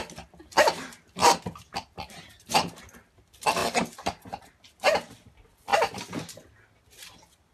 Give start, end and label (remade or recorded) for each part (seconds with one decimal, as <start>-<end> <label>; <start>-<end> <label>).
0.0-1.2 recorded; 1.2-2.8 remade; 2.8-7.5 recorded